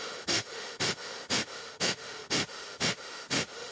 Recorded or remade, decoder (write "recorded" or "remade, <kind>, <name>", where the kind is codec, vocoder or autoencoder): remade, autoencoder, DAC-VAE